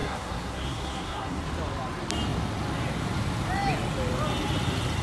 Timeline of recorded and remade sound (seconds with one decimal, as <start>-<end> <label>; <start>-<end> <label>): 0.0-1.4 remade; 1.4-5.0 recorded